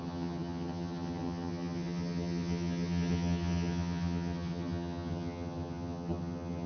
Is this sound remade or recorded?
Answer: remade